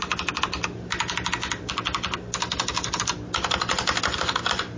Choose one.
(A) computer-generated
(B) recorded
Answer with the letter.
B